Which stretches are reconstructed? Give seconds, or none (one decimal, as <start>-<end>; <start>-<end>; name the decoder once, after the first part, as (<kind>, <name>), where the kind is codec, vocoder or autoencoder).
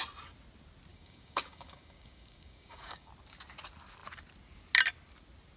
0.9-3.1 (codec, DAC)